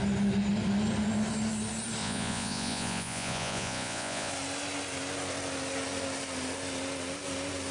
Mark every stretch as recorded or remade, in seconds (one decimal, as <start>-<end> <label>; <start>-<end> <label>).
0.0-2.0 recorded; 2.0-4.3 remade; 4.3-7.7 recorded